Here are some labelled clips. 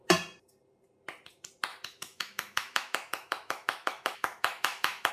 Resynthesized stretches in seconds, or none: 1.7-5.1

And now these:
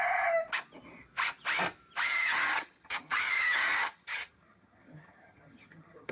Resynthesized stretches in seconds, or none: 2.1-6.1

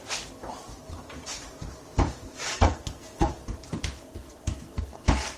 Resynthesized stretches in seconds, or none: 2.5-3.3; 4.0-5.4

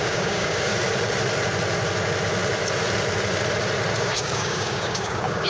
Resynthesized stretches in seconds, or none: 0.0-0.7; 4.0-5.5

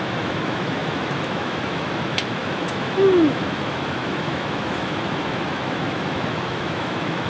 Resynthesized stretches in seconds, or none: 0.0-7.3

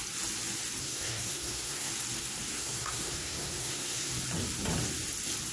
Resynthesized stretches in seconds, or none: 0.8-1.9; 2.5-4.1

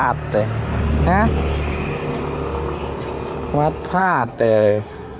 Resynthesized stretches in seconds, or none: 4.0-5.2

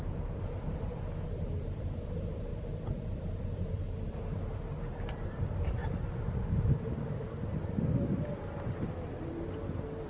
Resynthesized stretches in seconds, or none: 0.0-2.5; 3.4-4.2; 4.7-5.8; 8.3-10.1